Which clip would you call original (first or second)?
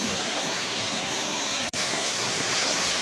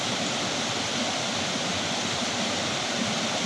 second